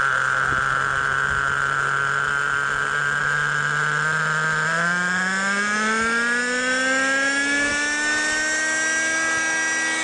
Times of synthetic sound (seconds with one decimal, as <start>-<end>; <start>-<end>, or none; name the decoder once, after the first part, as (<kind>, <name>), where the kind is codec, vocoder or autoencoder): none